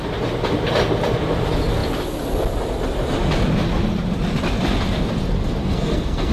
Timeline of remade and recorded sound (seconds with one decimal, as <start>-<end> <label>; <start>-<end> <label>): 0.0-5.6 recorded; 5.6-6.3 remade